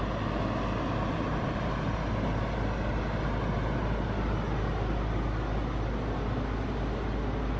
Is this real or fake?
real